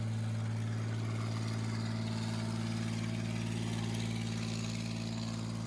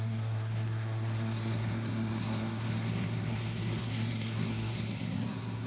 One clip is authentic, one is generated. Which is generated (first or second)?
second